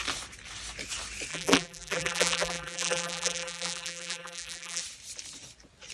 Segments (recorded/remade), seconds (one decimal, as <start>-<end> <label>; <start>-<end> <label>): 0.0-1.3 recorded; 1.3-4.8 remade; 4.8-5.9 recorded